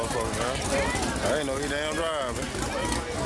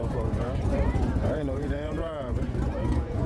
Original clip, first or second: first